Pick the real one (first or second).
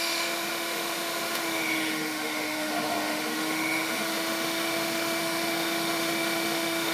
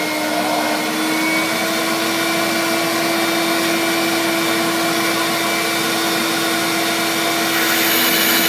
second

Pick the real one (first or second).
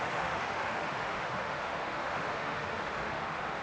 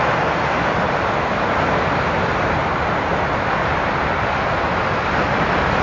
second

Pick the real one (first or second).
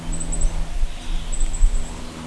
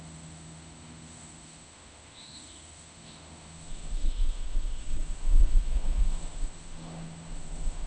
first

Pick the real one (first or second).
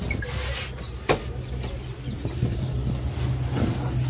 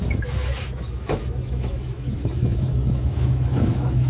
first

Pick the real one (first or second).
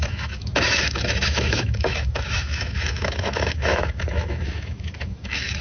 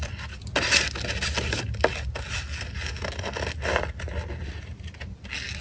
second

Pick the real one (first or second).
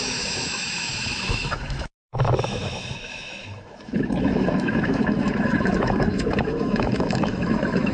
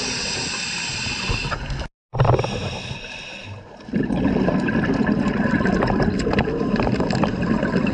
second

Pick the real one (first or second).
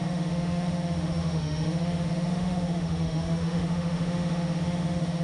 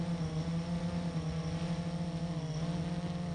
second